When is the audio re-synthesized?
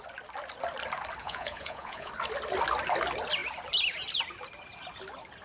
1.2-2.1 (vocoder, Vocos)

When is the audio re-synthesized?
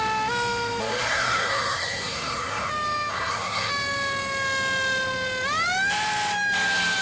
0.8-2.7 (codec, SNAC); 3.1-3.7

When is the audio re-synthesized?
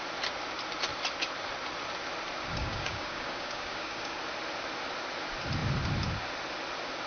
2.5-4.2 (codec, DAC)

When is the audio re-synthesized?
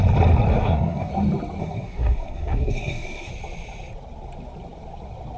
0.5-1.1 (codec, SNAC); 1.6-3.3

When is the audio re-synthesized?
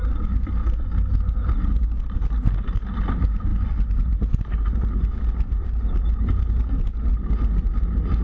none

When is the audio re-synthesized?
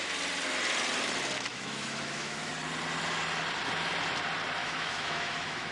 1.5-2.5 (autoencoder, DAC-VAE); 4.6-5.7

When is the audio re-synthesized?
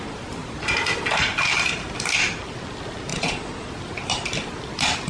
3.1-3.7 (vocoder, Vocos)